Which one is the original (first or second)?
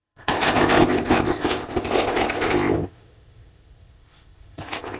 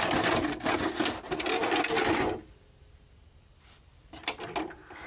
second